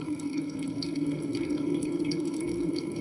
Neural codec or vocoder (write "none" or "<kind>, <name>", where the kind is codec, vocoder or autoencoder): codec, SNAC